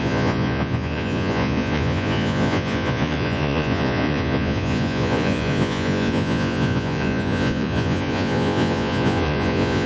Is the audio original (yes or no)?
no